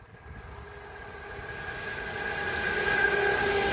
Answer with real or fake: real